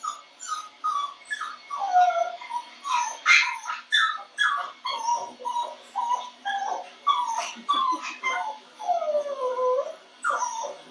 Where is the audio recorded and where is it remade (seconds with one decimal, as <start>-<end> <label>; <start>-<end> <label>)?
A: 0.0-0.6 recorded; 0.6-1.2 remade; 1.2-7.8 recorded; 7.8-9.5 remade; 9.5-10.9 recorded